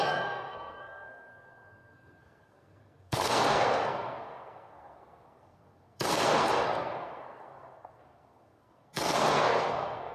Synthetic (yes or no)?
yes